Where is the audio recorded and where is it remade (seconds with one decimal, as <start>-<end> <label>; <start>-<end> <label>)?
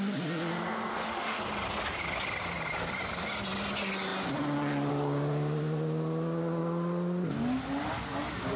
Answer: 0.0-0.9 recorded; 0.9-1.4 remade; 1.4-8.6 recorded